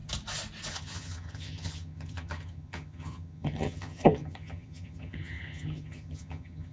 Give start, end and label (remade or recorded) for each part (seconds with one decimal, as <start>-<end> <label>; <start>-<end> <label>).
0.0-0.7 recorded; 0.7-6.7 remade